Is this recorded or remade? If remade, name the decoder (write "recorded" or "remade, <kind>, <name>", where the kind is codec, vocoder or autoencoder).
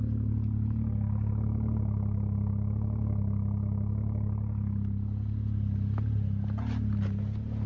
recorded